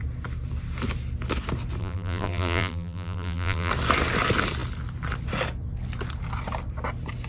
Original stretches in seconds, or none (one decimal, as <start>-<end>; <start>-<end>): 0.0-1.8; 3.7-7.3